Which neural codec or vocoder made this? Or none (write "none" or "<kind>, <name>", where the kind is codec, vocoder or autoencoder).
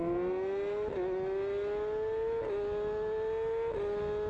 none